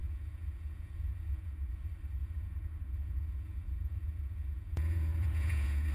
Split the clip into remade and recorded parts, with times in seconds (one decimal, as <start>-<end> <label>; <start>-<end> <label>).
0.0-1.8 remade; 1.8-2.2 recorded; 2.2-5.9 remade